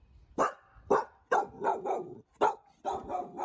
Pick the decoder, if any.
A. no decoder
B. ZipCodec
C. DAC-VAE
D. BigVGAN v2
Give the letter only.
A